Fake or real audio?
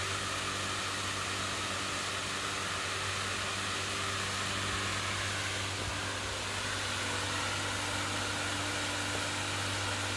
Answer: real